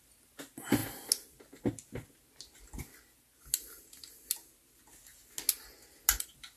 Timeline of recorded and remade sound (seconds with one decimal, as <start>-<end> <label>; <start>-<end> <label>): 0.0-6.6 recorded